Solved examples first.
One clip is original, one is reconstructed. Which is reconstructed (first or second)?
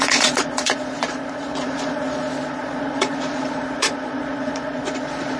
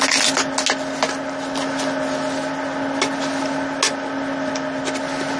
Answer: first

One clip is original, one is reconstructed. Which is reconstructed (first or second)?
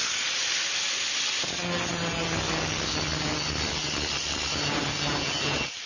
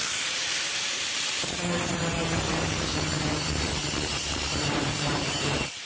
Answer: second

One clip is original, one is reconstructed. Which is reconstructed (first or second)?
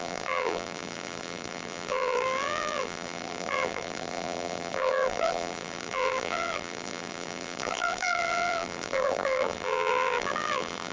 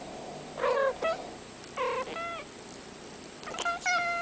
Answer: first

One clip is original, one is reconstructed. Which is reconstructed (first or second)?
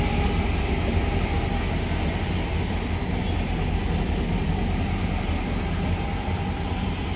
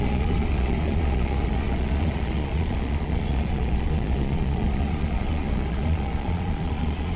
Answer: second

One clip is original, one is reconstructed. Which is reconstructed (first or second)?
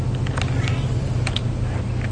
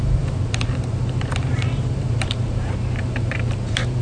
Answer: second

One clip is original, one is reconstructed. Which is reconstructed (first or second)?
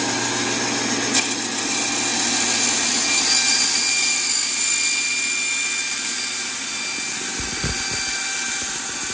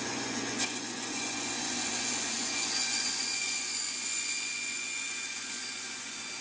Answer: second